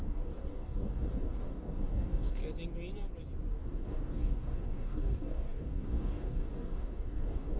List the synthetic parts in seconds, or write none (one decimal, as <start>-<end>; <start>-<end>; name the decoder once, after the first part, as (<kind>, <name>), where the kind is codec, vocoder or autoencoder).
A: 0.0-2.4 (codec, DAC); 3.5-7.6